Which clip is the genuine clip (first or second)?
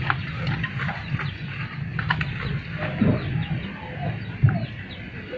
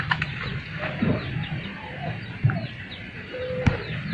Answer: first